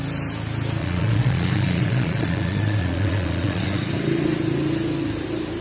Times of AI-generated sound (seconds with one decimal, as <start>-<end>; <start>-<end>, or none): 0.8-3.8